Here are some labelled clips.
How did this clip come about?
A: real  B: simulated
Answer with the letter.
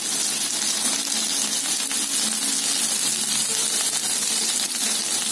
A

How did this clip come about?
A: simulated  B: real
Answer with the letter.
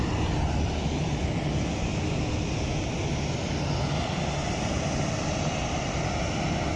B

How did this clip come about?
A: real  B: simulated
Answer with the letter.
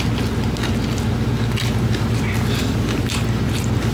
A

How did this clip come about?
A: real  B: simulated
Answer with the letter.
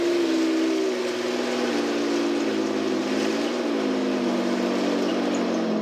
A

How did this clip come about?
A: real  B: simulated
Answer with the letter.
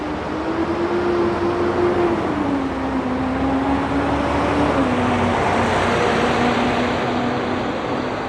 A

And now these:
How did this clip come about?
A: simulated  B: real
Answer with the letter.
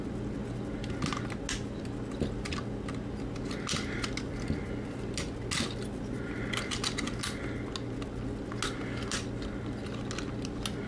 B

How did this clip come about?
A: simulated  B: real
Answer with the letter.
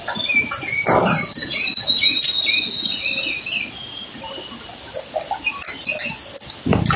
B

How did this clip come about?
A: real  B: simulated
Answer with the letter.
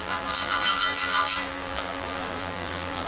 B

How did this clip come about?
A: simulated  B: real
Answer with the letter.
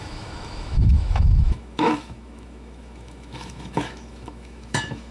A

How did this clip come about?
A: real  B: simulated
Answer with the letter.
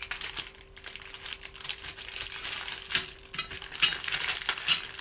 A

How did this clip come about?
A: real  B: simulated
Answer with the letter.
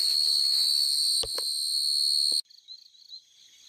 A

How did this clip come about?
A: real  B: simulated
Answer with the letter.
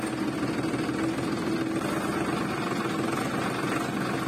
A